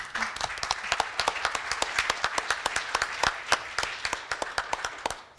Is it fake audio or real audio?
real